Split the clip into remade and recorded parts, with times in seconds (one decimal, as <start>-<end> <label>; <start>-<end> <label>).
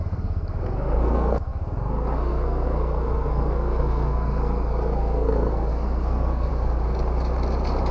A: 0.0-6.5 remade; 6.5-7.9 recorded